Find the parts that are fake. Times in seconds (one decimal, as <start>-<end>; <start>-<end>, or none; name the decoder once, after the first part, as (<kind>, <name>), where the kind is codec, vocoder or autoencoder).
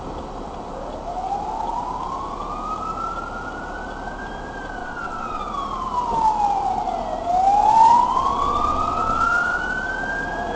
4.8-5.4 (vocoder, WaveNeXt); 7.6-9.6